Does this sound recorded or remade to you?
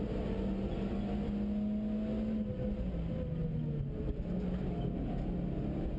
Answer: recorded